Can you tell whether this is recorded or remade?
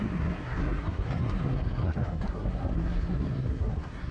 remade